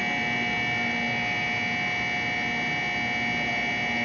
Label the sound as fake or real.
real